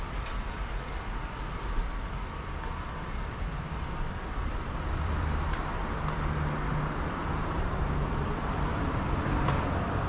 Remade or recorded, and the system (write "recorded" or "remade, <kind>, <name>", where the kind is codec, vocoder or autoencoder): remade, vocoder, BigVGAN v2